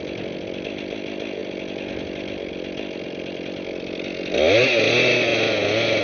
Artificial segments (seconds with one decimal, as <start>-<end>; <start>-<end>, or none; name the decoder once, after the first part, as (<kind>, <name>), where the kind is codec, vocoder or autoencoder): none

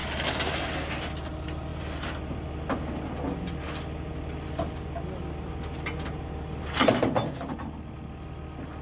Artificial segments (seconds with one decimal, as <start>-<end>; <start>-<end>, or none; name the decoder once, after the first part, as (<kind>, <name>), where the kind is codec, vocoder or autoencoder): none

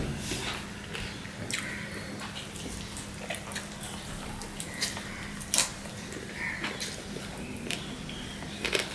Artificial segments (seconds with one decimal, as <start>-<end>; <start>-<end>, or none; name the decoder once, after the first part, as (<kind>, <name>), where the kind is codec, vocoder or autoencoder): 5.7-7.9 (vocoder, BigVGAN v2)

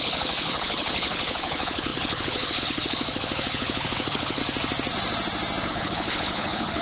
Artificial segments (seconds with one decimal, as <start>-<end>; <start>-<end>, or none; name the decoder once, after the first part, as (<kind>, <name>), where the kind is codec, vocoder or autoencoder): 0.0-4.4 (codec, HILCodec); 5.7-6.8

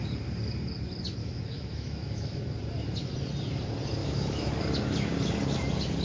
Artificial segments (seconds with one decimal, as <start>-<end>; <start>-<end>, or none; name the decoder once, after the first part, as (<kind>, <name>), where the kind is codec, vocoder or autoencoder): 1.2-2.4 (autoencoder, DAC-VAE); 4.0-4.5